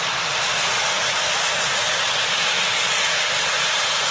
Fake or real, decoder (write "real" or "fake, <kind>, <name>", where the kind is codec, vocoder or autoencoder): real